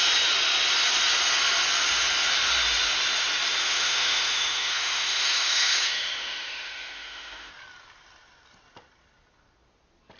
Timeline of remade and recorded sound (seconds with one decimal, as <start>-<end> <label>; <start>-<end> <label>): 0.0-3.6 recorded; 3.6-7.5 remade; 7.5-10.2 recorded